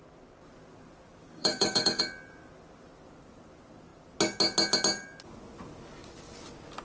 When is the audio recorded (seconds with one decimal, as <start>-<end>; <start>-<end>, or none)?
0.0-1.2; 2.0-6.8